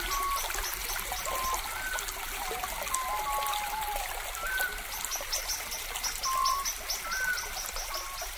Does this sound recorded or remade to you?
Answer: recorded